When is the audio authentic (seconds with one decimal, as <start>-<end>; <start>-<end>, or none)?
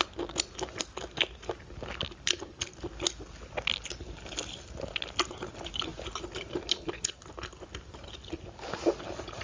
0.0-5.9; 6.7-9.4